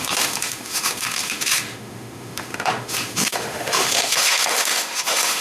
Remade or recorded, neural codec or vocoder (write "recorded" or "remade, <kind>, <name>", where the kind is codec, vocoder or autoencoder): remade, autoencoder, DAC-VAE